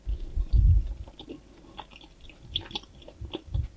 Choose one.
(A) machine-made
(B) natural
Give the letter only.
B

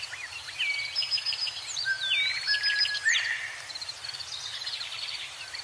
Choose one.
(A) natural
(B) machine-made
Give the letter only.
B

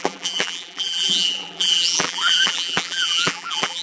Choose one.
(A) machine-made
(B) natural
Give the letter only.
A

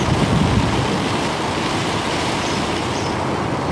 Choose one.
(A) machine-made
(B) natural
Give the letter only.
A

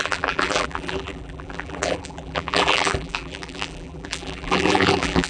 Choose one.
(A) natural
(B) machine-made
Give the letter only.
B